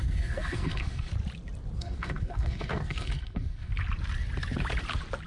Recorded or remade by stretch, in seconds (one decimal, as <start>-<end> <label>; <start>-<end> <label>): 0.0-1.1 remade; 1.1-1.8 recorded; 1.8-3.7 remade; 3.7-5.3 recorded